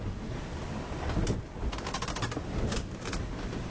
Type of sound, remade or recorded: recorded